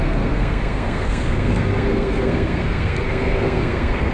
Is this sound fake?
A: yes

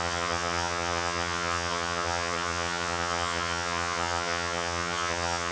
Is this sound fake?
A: yes